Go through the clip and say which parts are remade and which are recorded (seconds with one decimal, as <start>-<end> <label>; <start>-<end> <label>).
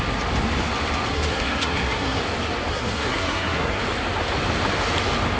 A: 0.0-1.1 recorded; 1.1-2.2 remade; 2.2-2.7 recorded; 2.7-3.8 remade; 3.8-5.4 recorded